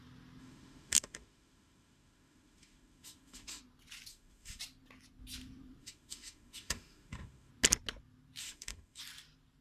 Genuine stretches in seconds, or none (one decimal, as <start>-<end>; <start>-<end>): 0.0-0.4; 3.6-4.1; 4.6-5.8; 7.5-8.4; 9.0-9.6